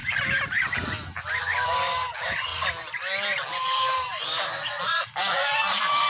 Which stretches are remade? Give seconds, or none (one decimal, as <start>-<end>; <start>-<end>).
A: none